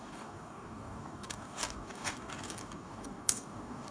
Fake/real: fake